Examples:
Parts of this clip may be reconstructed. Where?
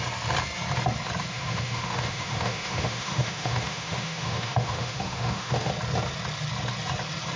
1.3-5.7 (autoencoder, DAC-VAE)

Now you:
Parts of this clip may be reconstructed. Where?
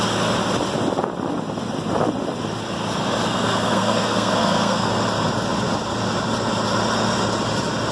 3.3-4.9 (codec, SNAC)